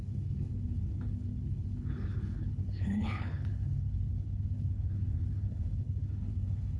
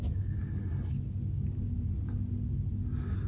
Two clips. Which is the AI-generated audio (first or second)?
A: first